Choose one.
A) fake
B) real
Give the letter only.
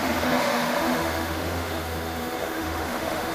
A